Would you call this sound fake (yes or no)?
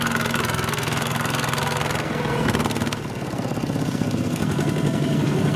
yes